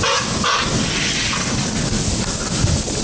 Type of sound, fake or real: real